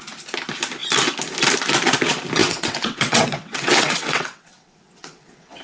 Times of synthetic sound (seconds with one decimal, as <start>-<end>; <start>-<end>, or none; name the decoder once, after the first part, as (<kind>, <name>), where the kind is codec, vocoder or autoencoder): 2.4-5.6 (vocoder, WaveNeXt)